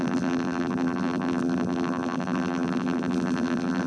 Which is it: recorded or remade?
remade